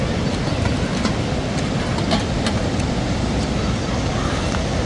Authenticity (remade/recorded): recorded